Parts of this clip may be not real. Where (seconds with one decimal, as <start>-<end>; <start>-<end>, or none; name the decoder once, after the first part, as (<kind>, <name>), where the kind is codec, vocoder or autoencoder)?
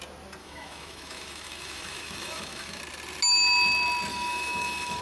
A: 0.4-2.8 (autoencoder, DAC-VAE); 4.1-5.0